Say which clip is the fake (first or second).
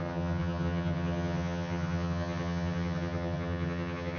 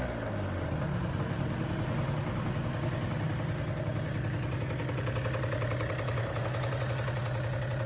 first